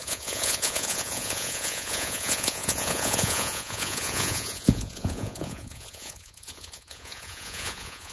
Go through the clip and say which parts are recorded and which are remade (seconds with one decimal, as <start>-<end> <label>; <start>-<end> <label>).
0.0-8.1 remade